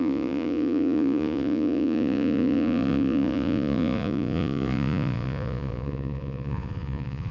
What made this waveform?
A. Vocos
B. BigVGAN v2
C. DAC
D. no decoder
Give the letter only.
A